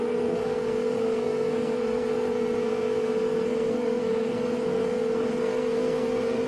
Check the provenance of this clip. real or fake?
fake